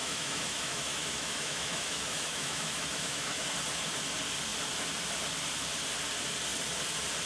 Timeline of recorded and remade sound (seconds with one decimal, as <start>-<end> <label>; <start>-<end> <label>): 0.0-3.5 remade; 3.5-7.3 recorded